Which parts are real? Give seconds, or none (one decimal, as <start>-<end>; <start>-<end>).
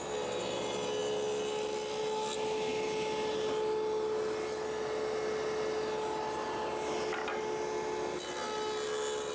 0.0-9.3